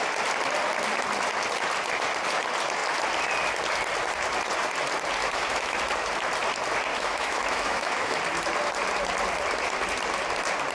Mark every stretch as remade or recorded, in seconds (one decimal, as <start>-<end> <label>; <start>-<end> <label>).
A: 0.0-5.2 recorded; 5.2-5.8 remade; 5.8-6.9 recorded; 6.9-8.2 remade; 8.2-10.7 recorded